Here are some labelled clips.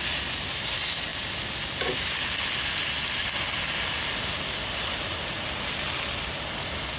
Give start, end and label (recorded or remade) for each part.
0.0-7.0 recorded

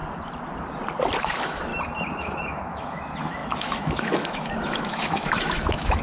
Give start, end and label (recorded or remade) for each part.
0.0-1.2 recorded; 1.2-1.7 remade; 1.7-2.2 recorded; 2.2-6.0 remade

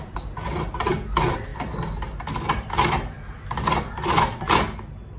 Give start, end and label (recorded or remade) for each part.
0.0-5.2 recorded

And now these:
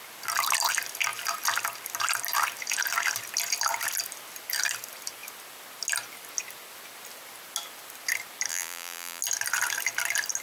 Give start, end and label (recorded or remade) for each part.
0.0-8.5 recorded; 8.5-9.2 remade; 9.2-10.4 recorded

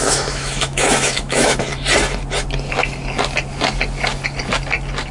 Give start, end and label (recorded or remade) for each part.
0.0-1.7 remade; 1.7-5.1 recorded

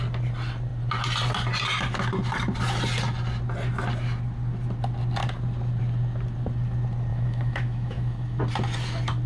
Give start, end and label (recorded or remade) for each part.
0.0-7.1 recorded; 7.1-8.4 remade; 8.4-9.3 recorded

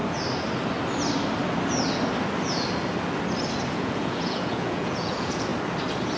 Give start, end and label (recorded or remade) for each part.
0.0-3.7 recorded; 3.7-5.5 remade; 5.5-6.2 recorded

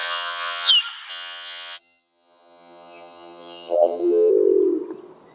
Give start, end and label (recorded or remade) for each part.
0.0-0.7 remade; 0.7-1.1 recorded; 1.1-4.3 remade; 4.3-5.3 recorded